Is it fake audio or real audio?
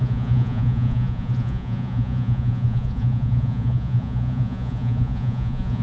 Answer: fake